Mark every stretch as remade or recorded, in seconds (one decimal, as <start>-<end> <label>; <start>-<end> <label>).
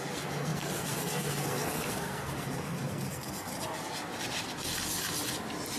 0.0-3.5 remade; 3.5-5.8 recorded